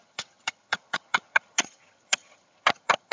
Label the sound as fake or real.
fake